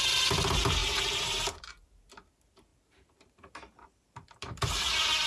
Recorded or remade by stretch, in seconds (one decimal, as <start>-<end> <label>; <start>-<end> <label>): 0.0-0.8 recorded; 0.8-1.7 remade; 1.7-2.7 recorded; 2.7-5.3 remade